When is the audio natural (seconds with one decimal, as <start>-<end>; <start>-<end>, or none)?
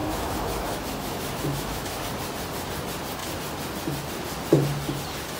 2.0-5.4